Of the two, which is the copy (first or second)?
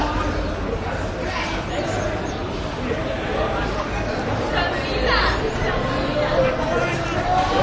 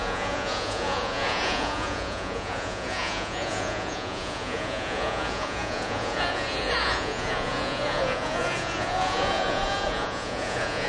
second